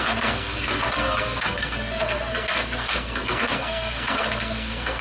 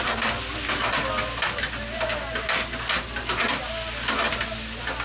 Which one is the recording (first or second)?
second